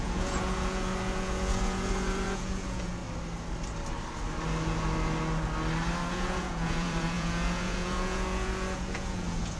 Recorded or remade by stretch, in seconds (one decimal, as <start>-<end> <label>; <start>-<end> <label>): 0.0-3.0 remade; 3.0-6.1 recorded; 6.1-9.6 remade